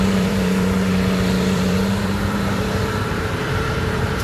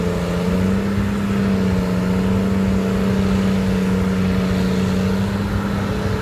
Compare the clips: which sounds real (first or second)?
second